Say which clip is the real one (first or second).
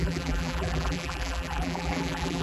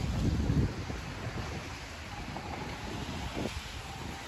second